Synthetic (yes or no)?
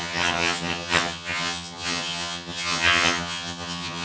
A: yes